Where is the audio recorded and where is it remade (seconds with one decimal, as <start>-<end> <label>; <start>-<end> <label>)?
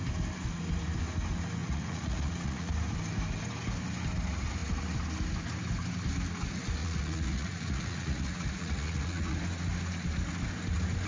0.0-1.6 recorded; 1.6-2.7 remade; 2.7-6.8 recorded; 6.8-9.4 remade; 9.4-11.1 recorded